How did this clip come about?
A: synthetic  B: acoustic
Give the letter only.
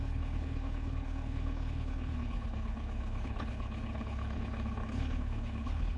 A